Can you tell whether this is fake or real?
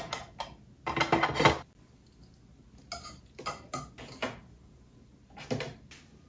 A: real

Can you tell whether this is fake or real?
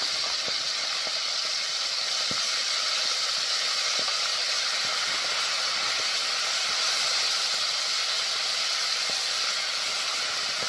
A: real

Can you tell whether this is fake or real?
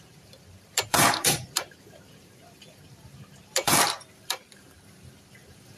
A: fake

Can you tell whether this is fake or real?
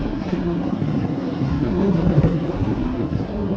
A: fake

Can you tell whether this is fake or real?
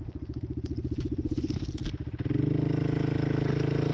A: real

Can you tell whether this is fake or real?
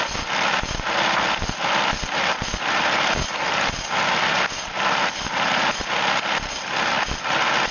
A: real